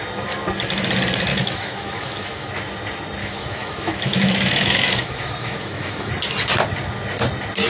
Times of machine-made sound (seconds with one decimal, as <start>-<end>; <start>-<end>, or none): 1.3-2.5; 3.2-6.1